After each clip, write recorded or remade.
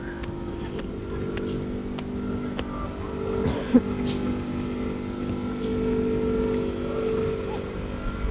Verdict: recorded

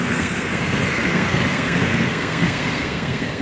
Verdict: remade